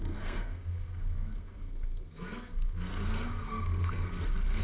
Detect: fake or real fake